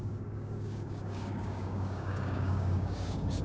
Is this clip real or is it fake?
fake